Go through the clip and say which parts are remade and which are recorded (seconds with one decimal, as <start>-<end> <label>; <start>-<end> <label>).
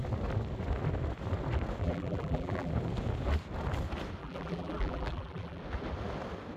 0.0-1.8 recorded; 1.8-2.7 remade; 2.7-4.2 recorded; 4.2-5.6 remade; 5.6-6.6 recorded